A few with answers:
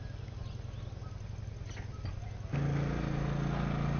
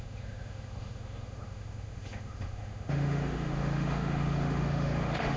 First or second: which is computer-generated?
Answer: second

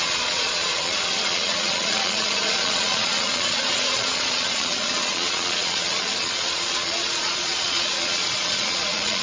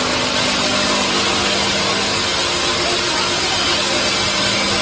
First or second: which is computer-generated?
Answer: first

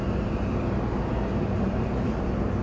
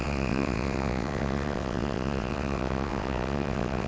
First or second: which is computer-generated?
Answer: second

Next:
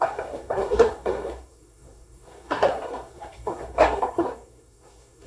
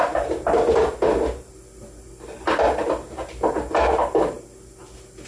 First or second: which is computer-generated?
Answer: first